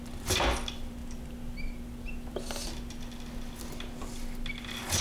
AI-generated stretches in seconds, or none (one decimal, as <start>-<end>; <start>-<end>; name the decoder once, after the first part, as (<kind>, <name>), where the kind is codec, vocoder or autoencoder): none